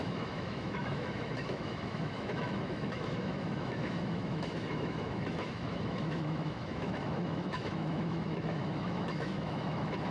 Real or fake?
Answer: fake